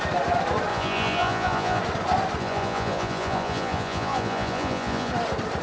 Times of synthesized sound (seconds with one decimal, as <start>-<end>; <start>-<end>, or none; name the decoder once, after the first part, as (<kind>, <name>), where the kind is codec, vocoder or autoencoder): 0.7-1.8 (vocoder, Vocos); 2.4-5.1